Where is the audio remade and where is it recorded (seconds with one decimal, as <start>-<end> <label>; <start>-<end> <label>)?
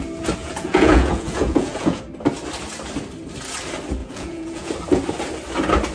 0.0-0.4 recorded; 0.4-2.0 remade; 2.0-4.0 recorded; 4.0-4.7 remade; 4.7-5.9 recorded